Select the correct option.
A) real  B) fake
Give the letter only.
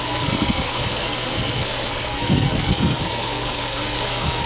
B